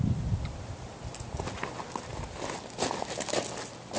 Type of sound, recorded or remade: recorded